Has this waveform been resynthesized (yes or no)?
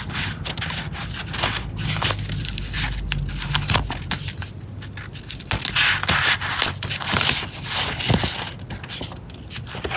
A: no